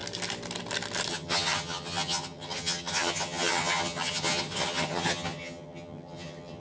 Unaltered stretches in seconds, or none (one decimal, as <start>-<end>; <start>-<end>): 0.0-1.1